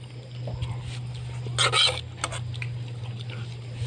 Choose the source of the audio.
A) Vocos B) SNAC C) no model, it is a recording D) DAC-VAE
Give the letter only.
C